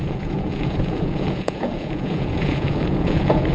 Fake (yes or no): yes